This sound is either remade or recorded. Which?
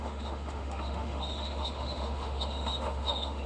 remade